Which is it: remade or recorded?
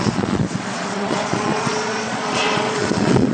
remade